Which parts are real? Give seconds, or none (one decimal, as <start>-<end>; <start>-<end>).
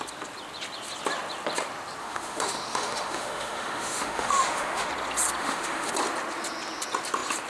0.0-2.0; 4.9-5.4; 5.9-7.5